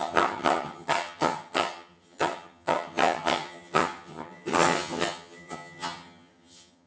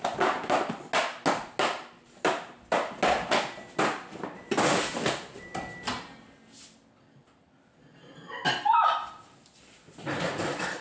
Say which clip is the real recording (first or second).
second